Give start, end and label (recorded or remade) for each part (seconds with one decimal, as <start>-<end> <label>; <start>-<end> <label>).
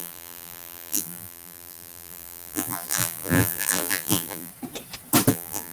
0.0-4.5 remade; 4.5-5.3 recorded; 5.3-5.7 remade